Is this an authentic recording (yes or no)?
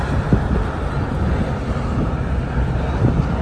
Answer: yes